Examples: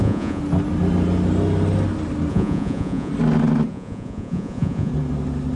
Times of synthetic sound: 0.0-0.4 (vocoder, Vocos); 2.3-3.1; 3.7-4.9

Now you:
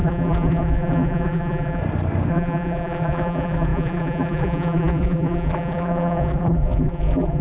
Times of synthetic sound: 0.0-1.8 (vocoder, BigVGAN v2); 2.3-7.4

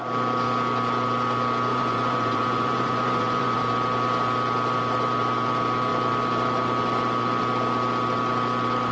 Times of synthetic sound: 1.7-3.6 (vocoder, Vocos)

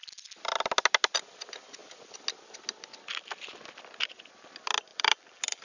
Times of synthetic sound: 4.9-5.6 (vocoder, BigVGAN v2)

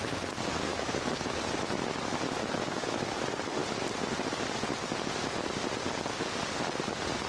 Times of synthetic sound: 0.7-1.4 (autoencoder, DAC-VAE); 2.4-3.2

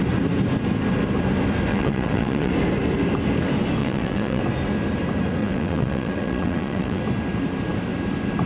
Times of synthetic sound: 1.7-2.5 (vocoder, WaveNeXt); 3.8-4.4; 5.4-7.0